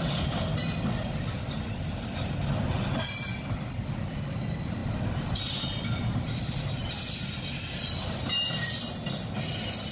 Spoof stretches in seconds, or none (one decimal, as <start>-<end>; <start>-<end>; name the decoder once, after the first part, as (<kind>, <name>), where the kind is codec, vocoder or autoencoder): none